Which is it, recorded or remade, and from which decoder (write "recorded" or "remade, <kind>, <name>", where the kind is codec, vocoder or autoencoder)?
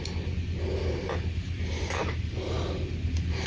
recorded